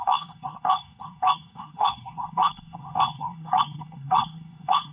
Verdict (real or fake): fake